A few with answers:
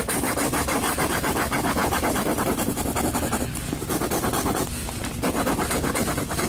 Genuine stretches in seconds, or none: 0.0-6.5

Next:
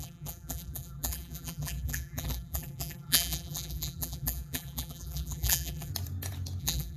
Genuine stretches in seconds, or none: 5.9-6.6

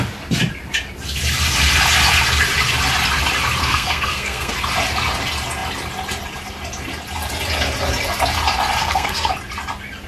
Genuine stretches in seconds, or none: 0.0-3.6; 4.5-8.8; 9.3-10.1

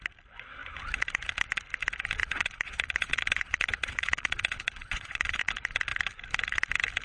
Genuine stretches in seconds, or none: 0.0-2.2; 5.5-7.0